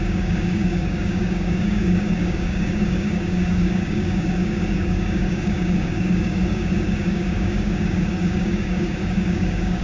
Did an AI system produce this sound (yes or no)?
yes